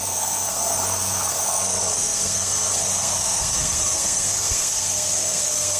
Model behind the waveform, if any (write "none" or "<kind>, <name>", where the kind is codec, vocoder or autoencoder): codec, SNAC